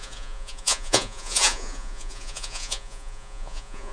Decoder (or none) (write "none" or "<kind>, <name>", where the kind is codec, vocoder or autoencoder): vocoder, Vocos